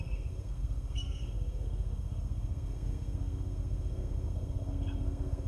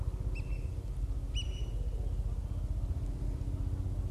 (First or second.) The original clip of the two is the second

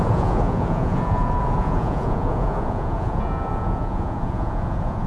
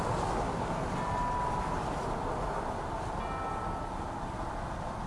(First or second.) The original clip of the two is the second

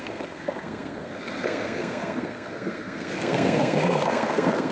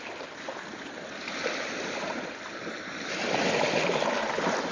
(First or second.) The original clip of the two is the second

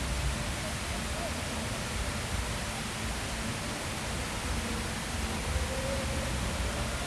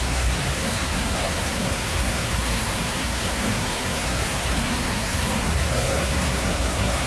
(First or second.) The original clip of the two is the first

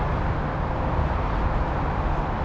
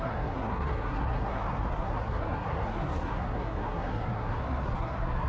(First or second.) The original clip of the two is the first